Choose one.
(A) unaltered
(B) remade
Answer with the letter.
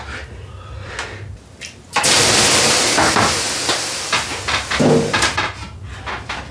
A